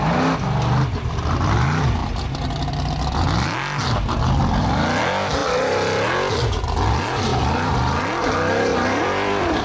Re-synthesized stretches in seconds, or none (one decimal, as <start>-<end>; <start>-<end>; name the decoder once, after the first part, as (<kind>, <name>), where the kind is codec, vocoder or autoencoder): 5.4-6.3 (vocoder, BigVGAN v2); 7.3-8.0; 8.7-9.6